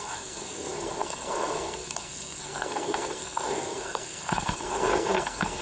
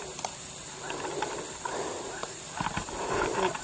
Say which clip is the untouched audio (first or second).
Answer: second